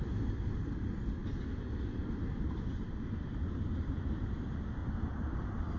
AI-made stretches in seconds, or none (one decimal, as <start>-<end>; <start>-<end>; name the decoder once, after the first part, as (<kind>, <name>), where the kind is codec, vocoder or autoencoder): 4.8-5.8 (vocoder, BigVGAN v2)

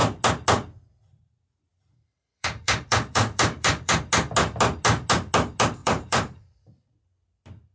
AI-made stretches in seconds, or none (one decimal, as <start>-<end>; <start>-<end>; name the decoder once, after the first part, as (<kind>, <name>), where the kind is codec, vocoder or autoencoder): 1.7-4.0 (vocoder, BigVGAN v2); 5.8-6.7

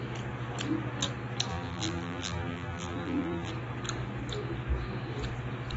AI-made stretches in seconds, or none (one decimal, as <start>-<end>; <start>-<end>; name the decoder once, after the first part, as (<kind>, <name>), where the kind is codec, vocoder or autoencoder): 1.5-3.5 (vocoder, BigVGAN v2)